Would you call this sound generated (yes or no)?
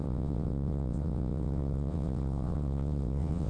yes